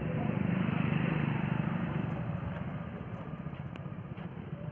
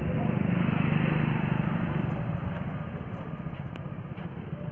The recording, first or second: second